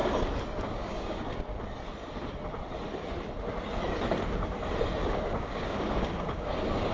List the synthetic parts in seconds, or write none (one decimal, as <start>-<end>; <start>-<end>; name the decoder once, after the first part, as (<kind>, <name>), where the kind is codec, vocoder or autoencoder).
0.6-1.5 (codec, DAC); 5.1-6.9